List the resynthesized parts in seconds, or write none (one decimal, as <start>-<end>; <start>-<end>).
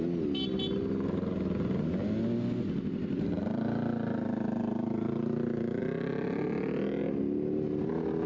none